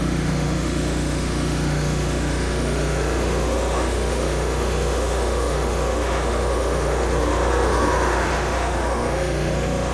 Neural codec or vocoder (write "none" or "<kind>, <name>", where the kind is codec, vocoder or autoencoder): autoencoder, DAC-VAE